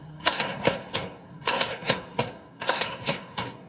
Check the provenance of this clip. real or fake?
fake